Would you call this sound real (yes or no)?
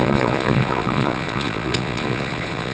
no